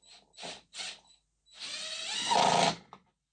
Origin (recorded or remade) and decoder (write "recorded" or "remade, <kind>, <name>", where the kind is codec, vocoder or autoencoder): recorded